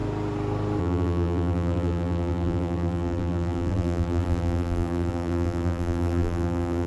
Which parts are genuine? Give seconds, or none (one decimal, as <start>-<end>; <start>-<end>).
0.0-0.8